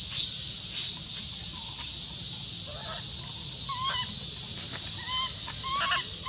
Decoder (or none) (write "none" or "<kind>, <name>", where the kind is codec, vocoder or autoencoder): none